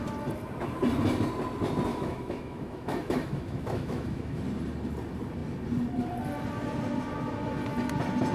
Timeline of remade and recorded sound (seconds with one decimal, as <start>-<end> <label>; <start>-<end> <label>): 0.0-1.9 recorded; 1.9-4.4 remade; 4.4-8.3 recorded